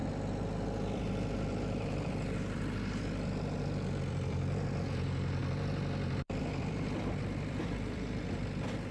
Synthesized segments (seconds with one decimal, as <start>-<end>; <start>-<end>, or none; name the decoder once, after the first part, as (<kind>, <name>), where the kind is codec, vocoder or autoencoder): 0.0-8.9 (vocoder, BigVGAN v2)